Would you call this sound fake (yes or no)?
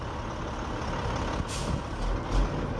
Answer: no